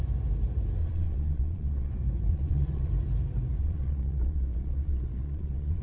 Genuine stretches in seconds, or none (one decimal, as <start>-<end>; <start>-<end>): 0.0-0.8; 1.9-2.3; 2.9-3.6